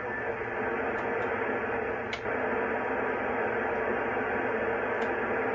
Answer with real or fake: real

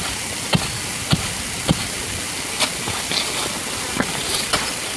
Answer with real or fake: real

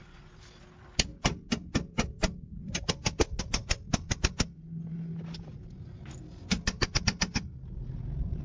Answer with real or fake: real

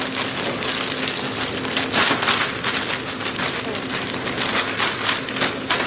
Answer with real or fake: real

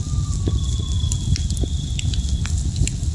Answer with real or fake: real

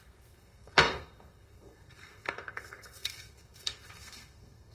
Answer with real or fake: fake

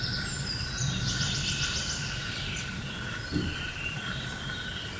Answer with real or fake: fake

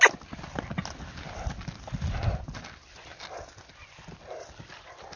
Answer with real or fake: real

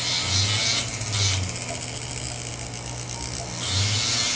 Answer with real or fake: real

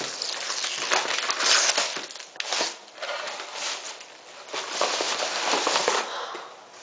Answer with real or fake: real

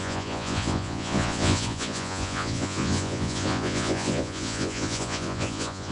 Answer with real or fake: fake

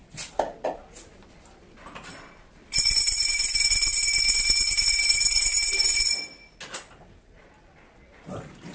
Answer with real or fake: real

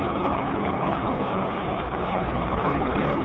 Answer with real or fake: fake